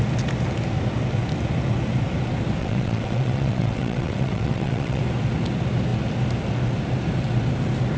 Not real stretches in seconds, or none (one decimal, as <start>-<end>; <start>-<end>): 2.6-5.0

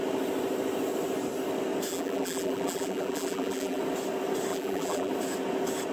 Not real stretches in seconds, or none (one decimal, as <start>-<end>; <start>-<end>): 1.9-3.8; 4.5-5.1

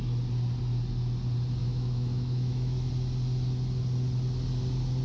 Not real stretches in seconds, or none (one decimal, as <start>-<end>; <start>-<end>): 1.6-2.9

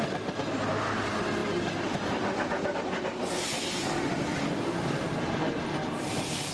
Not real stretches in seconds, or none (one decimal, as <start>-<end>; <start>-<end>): 1.4-5.3

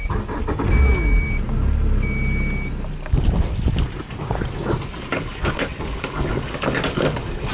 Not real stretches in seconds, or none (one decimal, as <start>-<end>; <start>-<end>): 5.1-7.5